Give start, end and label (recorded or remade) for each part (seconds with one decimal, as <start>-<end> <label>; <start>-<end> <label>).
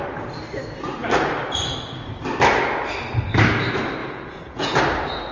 0.0-4.0 recorded; 4.0-4.8 remade; 4.8-5.3 recorded